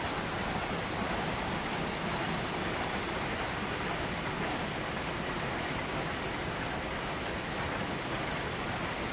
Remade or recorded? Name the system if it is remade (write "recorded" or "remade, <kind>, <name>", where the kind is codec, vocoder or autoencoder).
recorded